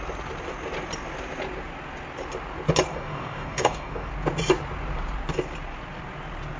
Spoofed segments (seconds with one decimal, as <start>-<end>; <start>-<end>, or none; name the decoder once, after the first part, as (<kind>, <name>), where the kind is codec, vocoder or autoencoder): 2.9-4.1 (codec, DAC)